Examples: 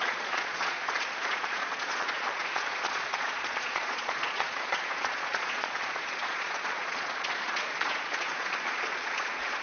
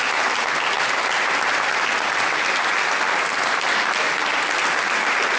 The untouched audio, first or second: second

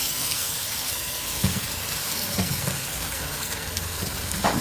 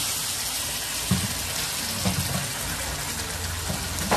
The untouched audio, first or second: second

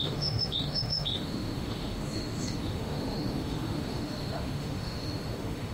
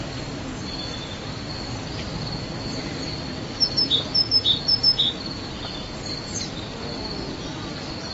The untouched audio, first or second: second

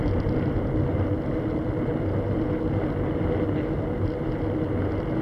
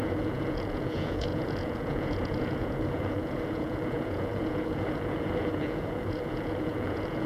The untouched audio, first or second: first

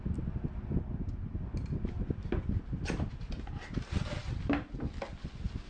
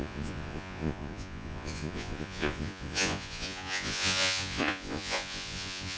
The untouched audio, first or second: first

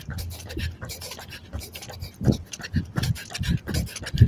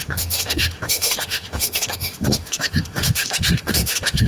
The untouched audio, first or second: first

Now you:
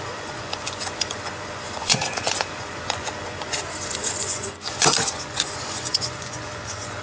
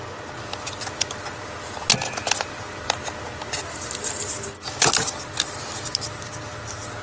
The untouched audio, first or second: second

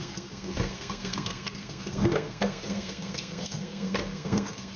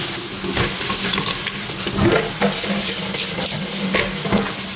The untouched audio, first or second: second